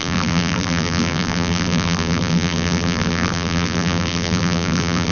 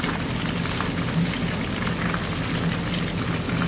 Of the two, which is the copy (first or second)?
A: first